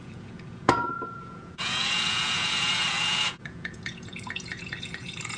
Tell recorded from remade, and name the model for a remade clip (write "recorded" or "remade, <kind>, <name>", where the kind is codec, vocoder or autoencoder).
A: remade, vocoder, Vocos